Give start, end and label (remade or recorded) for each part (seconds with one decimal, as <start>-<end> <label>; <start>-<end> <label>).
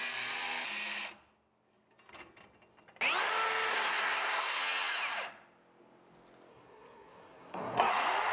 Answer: 0.0-3.7 recorded; 3.7-4.6 remade; 4.6-6.5 recorded; 6.5-7.9 remade; 7.9-8.3 recorded